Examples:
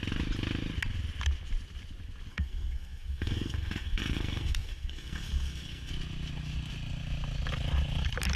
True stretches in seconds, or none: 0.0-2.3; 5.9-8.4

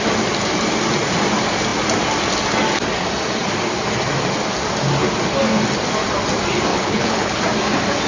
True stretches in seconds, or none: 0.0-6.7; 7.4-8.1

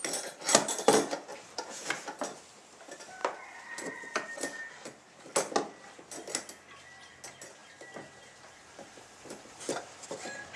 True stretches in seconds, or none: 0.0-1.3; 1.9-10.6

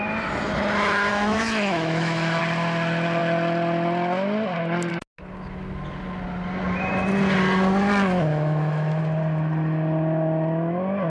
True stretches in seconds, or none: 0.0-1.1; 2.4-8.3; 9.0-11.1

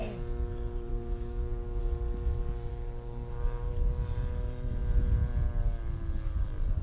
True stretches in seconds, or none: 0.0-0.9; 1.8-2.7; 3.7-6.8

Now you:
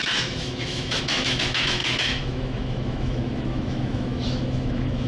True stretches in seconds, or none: none